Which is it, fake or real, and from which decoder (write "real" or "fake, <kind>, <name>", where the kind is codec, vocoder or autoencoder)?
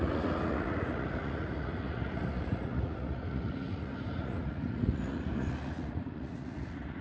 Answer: fake, vocoder, Vocos